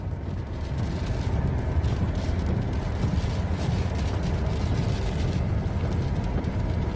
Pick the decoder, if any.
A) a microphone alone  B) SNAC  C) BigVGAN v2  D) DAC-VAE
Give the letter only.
A